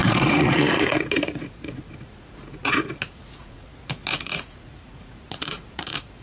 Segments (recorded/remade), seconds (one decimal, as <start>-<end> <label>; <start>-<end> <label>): 0.0-6.2 remade